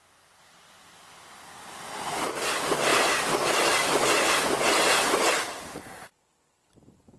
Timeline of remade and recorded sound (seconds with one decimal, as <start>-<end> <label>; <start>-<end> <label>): 0.0-7.2 recorded